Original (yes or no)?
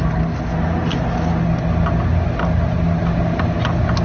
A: yes